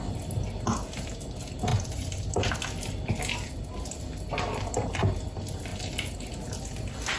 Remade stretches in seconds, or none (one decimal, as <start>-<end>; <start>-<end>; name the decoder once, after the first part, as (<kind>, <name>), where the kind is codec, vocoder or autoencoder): 1.7-2.5 (vocoder, BigVGAN v2)